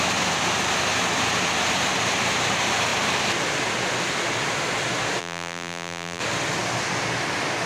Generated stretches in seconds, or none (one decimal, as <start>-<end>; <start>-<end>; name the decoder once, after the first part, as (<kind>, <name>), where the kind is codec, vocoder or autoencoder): 5.2-6.2 (vocoder, BigVGAN v2)